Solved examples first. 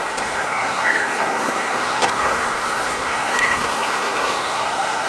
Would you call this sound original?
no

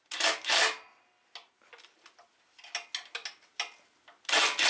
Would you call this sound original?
yes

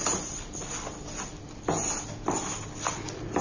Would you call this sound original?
yes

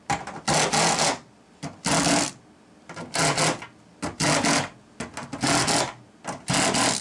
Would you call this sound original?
yes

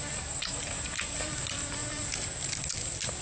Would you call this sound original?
yes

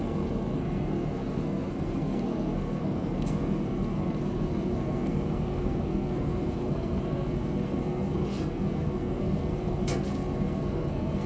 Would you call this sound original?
no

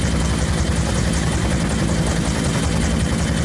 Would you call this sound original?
yes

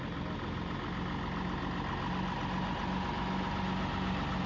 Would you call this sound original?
yes